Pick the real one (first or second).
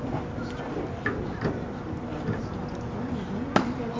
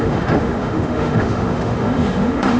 first